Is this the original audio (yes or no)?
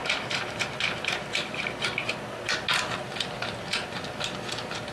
yes